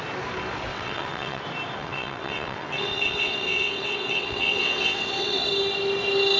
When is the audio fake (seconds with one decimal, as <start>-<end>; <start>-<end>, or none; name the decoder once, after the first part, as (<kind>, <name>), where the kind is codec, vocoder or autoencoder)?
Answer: 0.7-1.4 (vocoder, WaveNeXt); 1.8-5.5